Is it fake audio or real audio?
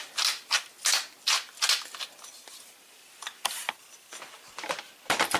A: real